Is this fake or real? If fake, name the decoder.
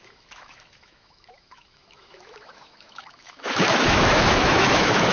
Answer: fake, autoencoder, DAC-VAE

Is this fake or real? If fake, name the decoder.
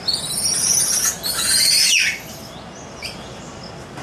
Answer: real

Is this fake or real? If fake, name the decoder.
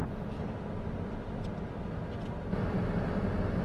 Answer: real